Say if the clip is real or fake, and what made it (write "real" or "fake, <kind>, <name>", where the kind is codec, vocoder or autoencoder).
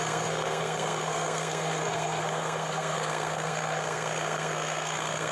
fake, codec, SNAC